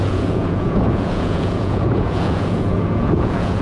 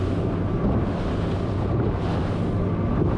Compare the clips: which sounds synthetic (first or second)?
first